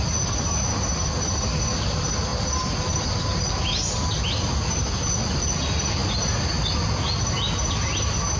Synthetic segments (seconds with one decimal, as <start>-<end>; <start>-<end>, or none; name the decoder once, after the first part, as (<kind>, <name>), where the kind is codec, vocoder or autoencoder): none